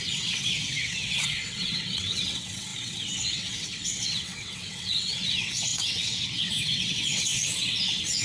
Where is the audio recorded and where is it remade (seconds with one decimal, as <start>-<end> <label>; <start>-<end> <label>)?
0.0-8.2 remade